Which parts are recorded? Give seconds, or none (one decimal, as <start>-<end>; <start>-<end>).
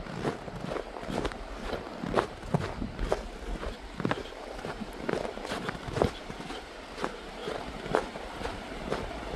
0.0-4.2; 6.5-9.4